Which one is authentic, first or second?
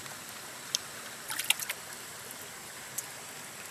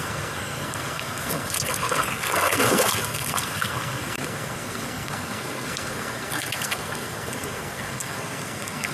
first